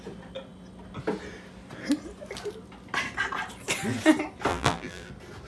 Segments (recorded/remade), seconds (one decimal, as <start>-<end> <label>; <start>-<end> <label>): 0.0-4.5 recorded; 4.5-5.1 remade; 5.1-5.5 recorded